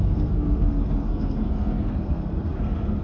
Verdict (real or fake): fake